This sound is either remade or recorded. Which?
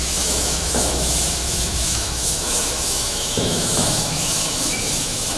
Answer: remade